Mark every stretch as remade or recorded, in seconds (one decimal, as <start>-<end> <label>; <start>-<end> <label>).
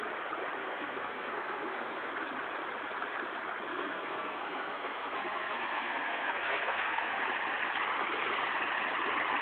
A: 0.0-0.6 recorded; 0.6-2.1 remade; 2.1-3.7 recorded; 3.7-7.2 remade; 7.2-9.4 recorded